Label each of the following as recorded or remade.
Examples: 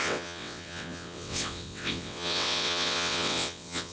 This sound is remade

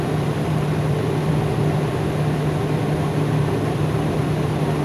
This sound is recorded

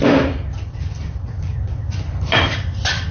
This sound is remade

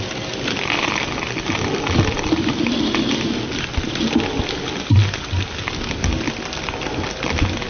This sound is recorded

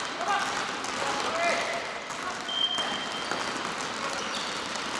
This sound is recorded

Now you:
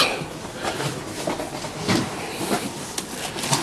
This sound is recorded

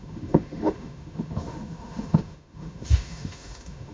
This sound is remade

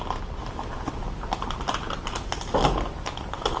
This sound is recorded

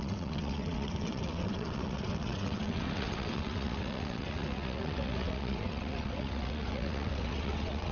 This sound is remade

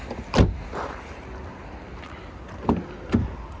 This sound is recorded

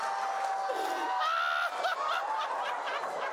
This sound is recorded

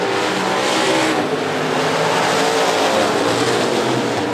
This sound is recorded